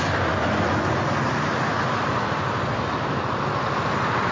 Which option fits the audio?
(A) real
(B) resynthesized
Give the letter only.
A